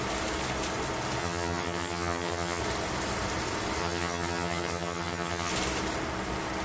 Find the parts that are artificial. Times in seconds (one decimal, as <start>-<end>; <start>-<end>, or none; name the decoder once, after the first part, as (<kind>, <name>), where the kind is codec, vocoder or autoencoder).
1.2-2.6 (vocoder, HiFi-GAN); 3.8-5.5